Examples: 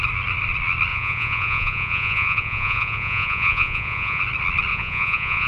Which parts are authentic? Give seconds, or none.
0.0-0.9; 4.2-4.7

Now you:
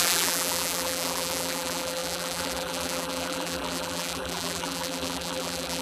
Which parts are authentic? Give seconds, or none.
none

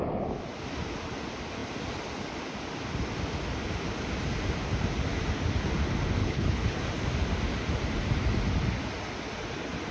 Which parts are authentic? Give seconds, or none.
0.0-6.2; 6.8-9.9

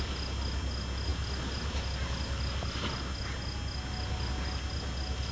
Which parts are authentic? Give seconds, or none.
0.0-5.3

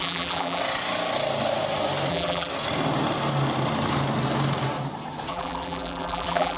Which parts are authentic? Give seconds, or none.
0.6-2.1; 2.5-5.3

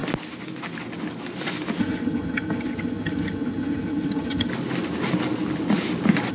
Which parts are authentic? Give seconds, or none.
0.0-1.8; 4.5-6.3

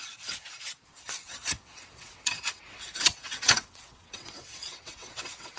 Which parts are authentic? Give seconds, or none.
0.0-0.9

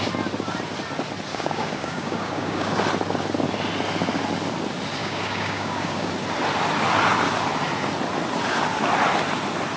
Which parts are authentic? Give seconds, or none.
0.0-1.3; 2.7-5.0; 6.1-9.8